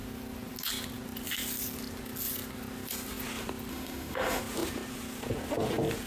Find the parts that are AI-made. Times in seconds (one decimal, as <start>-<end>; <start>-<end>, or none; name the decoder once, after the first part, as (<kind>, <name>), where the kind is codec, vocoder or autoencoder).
3.7-4.4 (autoencoder, DAC-VAE)